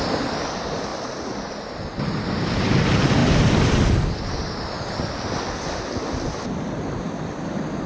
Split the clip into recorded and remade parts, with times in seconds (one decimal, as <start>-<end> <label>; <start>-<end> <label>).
0.0-7.9 recorded